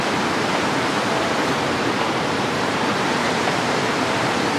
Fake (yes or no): yes